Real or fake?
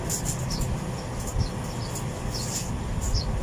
real